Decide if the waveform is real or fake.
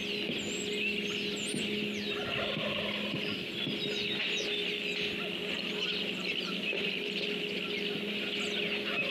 real